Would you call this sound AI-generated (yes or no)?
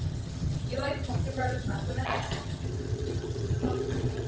yes